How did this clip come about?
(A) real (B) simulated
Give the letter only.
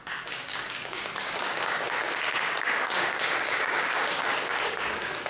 B